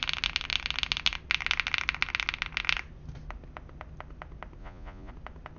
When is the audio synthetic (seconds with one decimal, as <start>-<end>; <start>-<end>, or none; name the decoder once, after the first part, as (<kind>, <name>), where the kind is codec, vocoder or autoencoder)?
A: 4.6-5.1 (vocoder, Vocos)